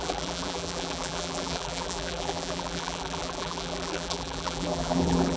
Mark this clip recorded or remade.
remade